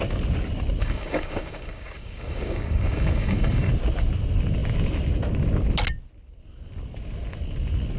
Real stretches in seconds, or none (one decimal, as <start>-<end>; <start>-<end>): 0.0-0.8; 3.7-8.0